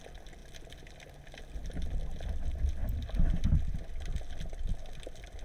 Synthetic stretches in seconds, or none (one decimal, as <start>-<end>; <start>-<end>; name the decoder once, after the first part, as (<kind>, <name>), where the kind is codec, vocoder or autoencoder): none